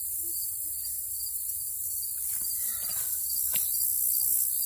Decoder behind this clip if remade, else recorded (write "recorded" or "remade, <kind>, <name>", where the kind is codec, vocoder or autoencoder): recorded